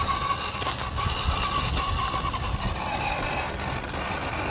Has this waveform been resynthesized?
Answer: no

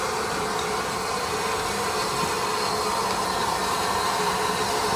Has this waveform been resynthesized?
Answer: no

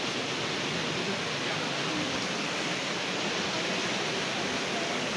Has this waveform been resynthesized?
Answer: no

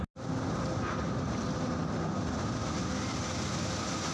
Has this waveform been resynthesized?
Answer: no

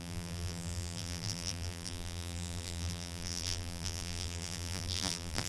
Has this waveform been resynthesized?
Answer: yes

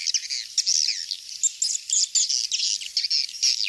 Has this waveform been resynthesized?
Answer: no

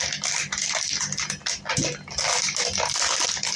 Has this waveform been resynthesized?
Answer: no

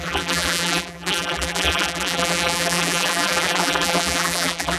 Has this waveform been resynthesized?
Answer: yes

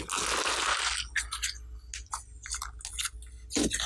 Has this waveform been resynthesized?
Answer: no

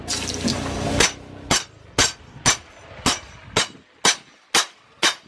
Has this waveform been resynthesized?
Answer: no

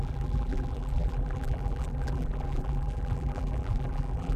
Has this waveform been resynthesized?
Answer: yes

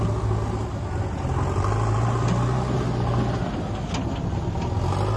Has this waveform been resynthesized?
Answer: no